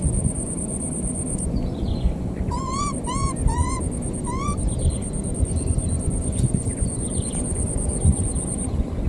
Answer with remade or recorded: remade